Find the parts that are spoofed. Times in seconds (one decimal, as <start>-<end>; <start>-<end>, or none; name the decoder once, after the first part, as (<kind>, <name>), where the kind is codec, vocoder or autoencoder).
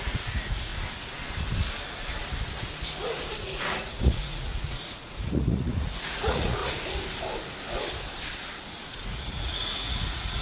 0.0-0.7 (vocoder, Vocos); 3.4-6.6; 8.7-10.4